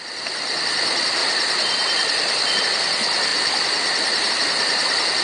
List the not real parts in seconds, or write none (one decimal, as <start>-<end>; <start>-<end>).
1.2-2.6; 3.3-4.3